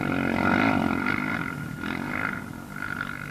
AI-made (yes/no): no